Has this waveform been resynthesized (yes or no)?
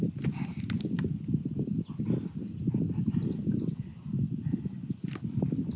no